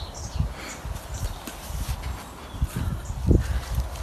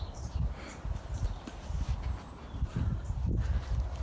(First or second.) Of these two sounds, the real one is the first